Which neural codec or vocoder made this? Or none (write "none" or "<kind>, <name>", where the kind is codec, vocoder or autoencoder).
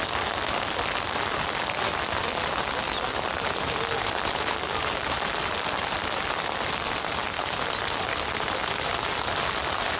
none